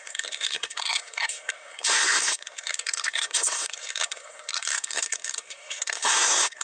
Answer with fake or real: fake